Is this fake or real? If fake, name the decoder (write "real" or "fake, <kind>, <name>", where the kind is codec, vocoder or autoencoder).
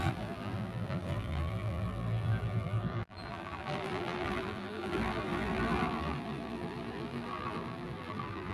fake, vocoder, BigVGAN v2